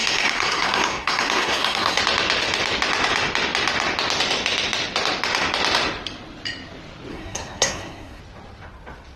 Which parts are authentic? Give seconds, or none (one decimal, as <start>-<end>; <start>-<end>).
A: 2.0-7.1; 8.2-9.2